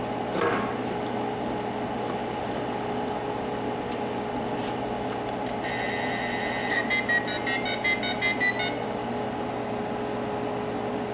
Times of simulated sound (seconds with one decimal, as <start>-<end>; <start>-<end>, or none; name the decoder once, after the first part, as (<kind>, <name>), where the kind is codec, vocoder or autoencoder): none